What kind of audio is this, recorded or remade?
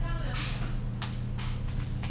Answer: recorded